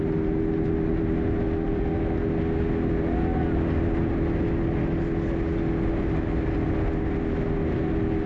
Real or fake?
real